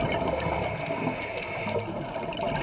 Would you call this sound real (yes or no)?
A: yes